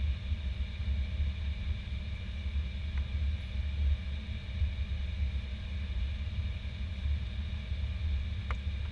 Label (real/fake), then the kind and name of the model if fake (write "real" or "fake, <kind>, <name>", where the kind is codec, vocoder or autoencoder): real